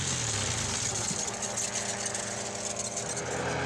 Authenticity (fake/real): real